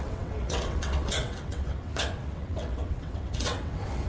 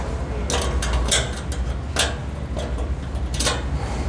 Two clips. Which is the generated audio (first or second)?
first